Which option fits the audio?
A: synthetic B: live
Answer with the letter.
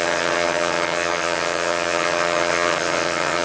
A